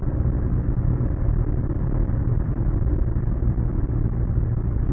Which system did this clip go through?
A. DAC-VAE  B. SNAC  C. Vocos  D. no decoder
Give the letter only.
D